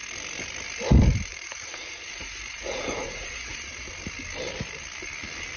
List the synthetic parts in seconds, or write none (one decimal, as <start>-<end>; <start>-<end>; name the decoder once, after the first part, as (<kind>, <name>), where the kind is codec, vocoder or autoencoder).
1.3-3.9 (vocoder, Vocos)